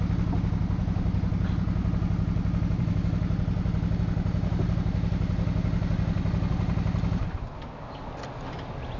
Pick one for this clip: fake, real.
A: real